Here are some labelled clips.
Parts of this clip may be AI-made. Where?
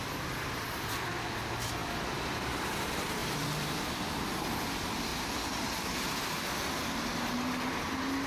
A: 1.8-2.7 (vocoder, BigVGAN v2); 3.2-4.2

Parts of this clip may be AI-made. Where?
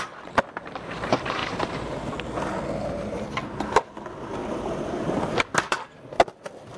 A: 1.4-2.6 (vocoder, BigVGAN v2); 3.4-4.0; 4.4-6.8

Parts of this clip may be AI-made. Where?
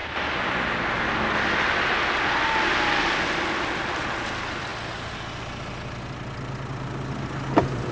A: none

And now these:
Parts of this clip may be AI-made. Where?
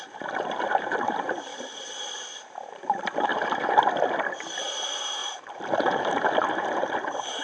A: 0.0-3.3 (vocoder, BigVGAN v2); 4.7-7.4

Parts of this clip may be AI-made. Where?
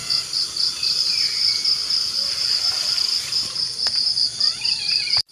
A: 1.8-5.3 (vocoder, BigVGAN v2)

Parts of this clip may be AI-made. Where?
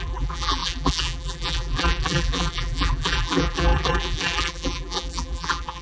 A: 0.0-5.8 (vocoder, BigVGAN v2)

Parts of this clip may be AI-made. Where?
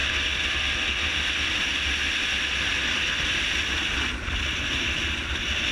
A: none